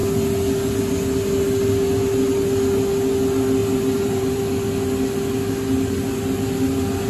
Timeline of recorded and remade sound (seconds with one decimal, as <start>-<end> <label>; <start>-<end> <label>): 0.0-3.6 recorded; 3.6-4.4 remade; 4.4-7.1 recorded